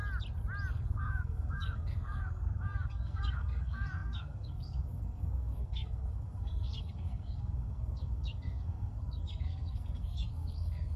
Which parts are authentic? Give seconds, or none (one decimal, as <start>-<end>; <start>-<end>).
0.0-0.7